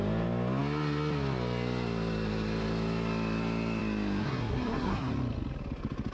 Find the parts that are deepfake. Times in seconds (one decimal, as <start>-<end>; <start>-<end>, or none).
4.2-5.1